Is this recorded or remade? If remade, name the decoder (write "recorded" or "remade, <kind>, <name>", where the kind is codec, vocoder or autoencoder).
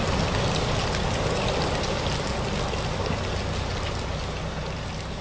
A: recorded